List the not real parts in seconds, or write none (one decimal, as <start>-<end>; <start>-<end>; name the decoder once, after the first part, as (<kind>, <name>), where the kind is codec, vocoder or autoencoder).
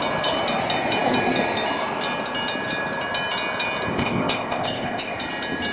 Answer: 3.9-5.1 (codec, ZipCodec)